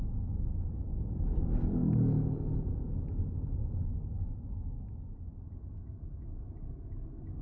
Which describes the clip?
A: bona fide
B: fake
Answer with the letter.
A